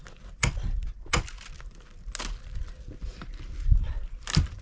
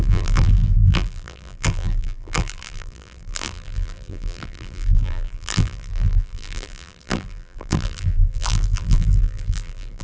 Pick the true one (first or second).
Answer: first